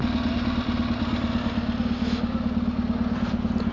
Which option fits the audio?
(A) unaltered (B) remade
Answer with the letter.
A